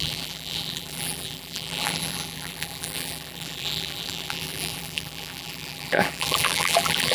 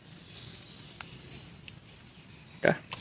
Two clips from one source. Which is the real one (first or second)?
second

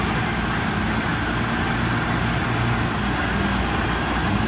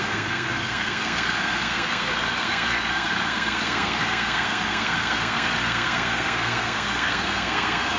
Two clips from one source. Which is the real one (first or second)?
first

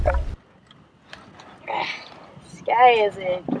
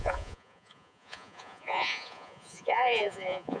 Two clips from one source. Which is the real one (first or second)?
first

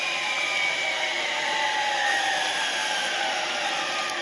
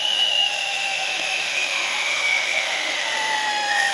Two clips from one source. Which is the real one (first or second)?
first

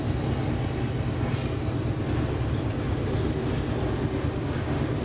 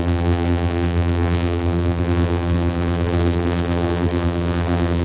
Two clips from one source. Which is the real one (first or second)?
first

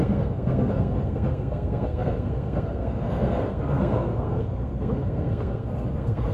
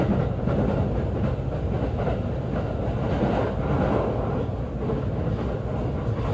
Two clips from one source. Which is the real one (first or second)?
second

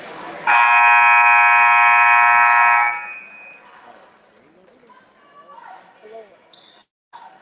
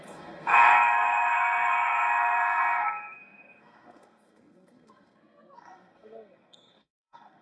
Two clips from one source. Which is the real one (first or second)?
first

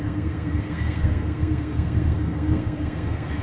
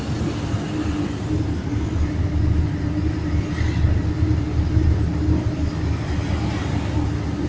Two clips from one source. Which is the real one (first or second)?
second